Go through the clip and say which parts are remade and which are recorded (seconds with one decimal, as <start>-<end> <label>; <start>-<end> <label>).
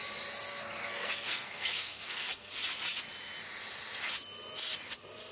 0.0-0.5 recorded; 0.5-2.5 remade; 2.5-5.3 recorded